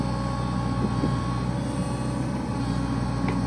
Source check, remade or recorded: recorded